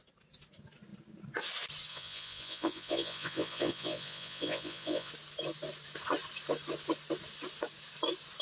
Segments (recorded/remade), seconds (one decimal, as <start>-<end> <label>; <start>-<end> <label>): 0.0-1.9 recorded; 1.9-5.1 remade; 5.1-8.4 recorded